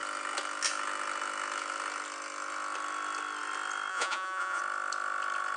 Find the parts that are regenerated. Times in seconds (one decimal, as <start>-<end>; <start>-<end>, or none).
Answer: 3.9-4.6

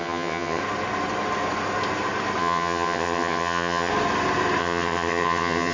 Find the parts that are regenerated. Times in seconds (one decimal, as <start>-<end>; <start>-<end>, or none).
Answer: 0.0-0.6; 2.4-3.9; 4.6-5.7

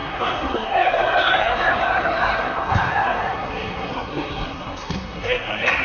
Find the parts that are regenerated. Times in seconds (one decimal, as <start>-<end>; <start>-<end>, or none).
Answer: 0.0-5.8

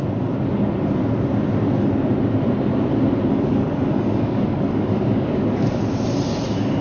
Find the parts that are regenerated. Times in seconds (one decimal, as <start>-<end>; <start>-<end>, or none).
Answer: 3.3-5.8

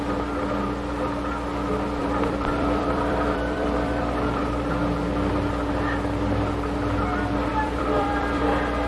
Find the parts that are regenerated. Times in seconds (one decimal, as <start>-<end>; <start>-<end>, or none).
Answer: 2.0-4.7; 7.5-8.9

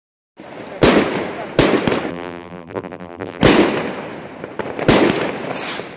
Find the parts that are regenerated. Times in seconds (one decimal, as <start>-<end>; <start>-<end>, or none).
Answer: 2.1-3.4